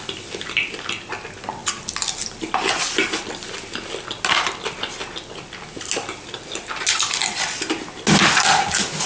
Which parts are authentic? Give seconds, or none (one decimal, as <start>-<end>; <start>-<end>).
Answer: 0.0-9.1